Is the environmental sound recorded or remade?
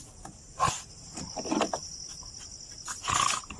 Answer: recorded